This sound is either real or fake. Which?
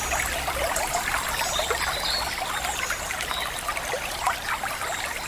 real